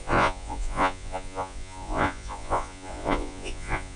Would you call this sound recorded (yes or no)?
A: no